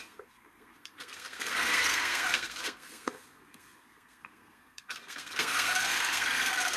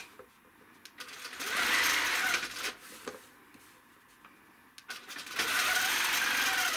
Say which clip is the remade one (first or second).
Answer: first